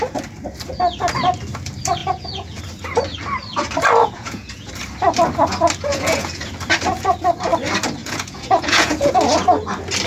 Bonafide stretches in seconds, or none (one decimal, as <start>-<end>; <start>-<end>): 0.0-2.0; 2.6-4.0; 4.7-5.9; 6.5-8.0; 9.1-10.1